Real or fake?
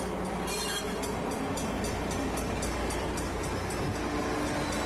real